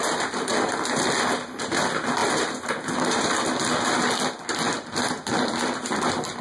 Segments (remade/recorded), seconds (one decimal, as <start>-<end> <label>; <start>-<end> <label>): 0.0-6.4 recorded